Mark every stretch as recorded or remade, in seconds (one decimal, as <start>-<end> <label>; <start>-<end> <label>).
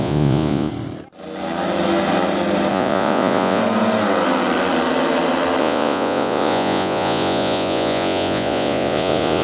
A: 0.0-0.7 remade; 0.7-2.7 recorded; 2.7-3.6 remade; 3.6-5.6 recorded; 5.6-9.4 remade